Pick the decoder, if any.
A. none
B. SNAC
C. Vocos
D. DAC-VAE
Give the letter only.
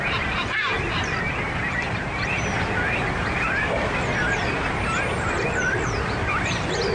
A